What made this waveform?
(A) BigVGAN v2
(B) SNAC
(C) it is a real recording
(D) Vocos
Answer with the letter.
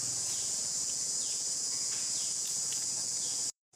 D